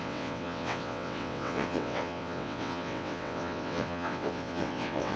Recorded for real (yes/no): no